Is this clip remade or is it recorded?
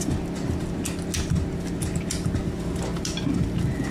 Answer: recorded